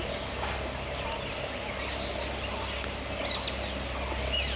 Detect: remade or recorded recorded